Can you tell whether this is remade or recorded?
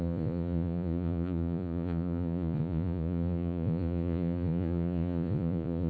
remade